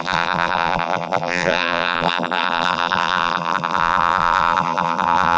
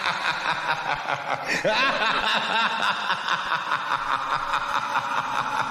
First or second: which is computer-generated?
first